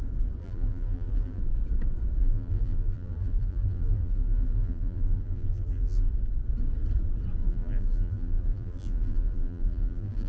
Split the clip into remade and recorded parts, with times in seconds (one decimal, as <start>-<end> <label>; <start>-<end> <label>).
0.0-0.4 recorded; 0.4-1.4 remade; 1.4-2.2 recorded; 2.2-6.1 remade; 6.1-7.4 recorded; 7.4-10.3 remade